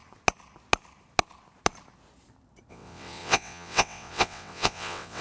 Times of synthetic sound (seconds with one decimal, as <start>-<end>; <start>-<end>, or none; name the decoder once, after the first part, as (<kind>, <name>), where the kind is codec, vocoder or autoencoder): 2.7-5.2 (vocoder, WaveNeXt)